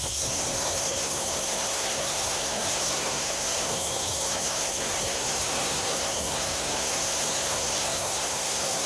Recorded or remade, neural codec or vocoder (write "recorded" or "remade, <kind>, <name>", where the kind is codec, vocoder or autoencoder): remade, codec, SNAC